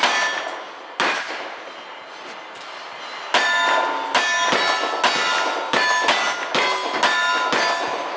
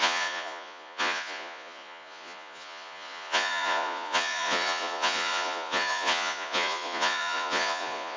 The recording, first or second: first